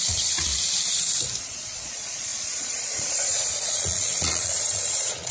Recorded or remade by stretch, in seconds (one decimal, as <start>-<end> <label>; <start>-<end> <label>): 0.0-0.5 remade; 0.5-1.4 recorded; 1.4-5.3 remade

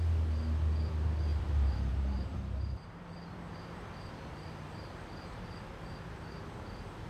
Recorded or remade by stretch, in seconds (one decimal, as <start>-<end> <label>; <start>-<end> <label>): 0.0-1.3 recorded; 1.3-5.6 remade; 5.6-7.1 recorded

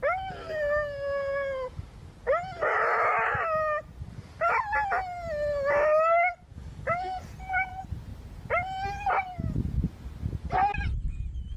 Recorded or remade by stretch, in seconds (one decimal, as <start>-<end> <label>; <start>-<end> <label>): 0.0-6.5 recorded; 6.5-7.2 remade; 7.2-11.6 recorded